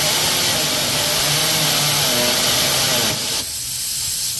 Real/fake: real